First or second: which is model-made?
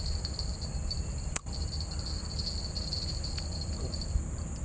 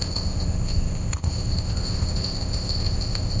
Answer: second